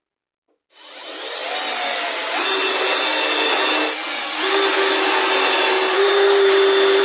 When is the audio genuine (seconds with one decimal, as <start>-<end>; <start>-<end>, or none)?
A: 0.0-7.0